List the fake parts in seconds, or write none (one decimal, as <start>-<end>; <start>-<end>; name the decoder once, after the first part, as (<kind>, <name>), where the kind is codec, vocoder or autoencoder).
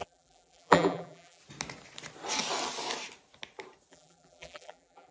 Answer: 0.0-1.4 (vocoder, BigVGAN v2); 3.9-5.1